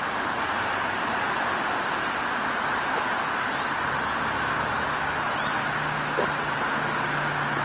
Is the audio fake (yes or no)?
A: no